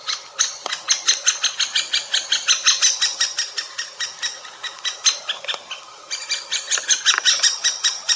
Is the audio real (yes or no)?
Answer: yes